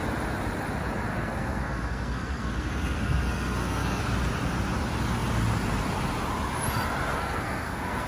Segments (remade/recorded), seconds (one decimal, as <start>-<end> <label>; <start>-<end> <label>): 0.0-1.1 recorded; 1.1-4.0 remade; 4.0-7.1 recorded; 7.1-8.1 remade